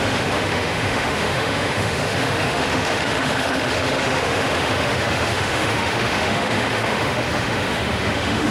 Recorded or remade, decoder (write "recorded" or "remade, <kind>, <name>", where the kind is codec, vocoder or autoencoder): remade, autoencoder, DAC-VAE